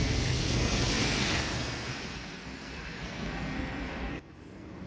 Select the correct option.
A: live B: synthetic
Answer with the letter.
B